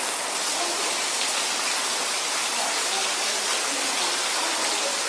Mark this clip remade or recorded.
recorded